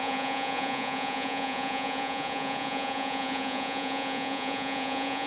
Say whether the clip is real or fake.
fake